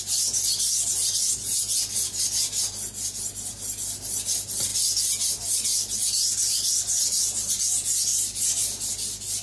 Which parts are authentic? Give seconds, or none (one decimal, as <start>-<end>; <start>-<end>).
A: 0.0-8.1; 8.9-9.4